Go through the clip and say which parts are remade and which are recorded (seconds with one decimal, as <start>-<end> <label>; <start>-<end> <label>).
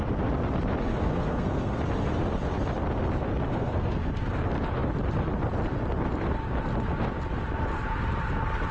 0.0-0.9 recorded; 0.9-1.8 remade; 1.8-3.5 recorded; 3.5-4.1 remade; 4.1-8.7 recorded